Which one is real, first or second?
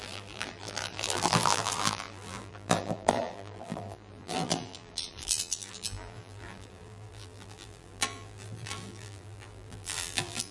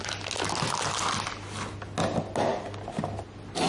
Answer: second